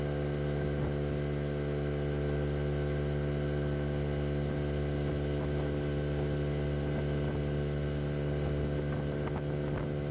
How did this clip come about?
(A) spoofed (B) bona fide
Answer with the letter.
B